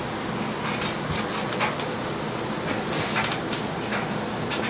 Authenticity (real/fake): real